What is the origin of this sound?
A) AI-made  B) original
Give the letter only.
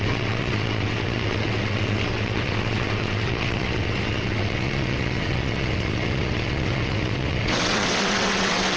A